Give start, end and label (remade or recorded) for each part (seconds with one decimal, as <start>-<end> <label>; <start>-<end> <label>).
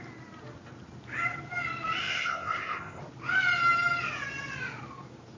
0.0-2.0 recorded; 2.0-3.0 remade; 3.0-5.4 recorded